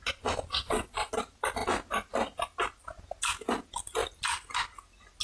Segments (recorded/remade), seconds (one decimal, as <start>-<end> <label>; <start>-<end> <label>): 0.0-0.5 recorded; 0.5-1.1 remade; 1.1-5.2 recorded